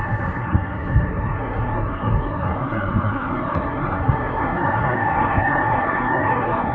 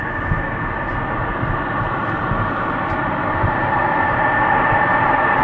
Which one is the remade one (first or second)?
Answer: first